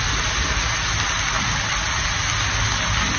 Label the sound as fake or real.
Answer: real